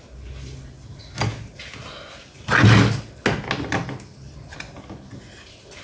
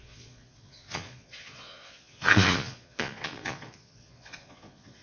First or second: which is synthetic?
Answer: second